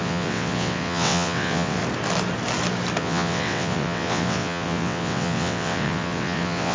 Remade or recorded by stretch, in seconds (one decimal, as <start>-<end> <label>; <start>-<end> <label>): 0.0-1.8 remade; 1.8-3.0 recorded; 3.0-6.7 remade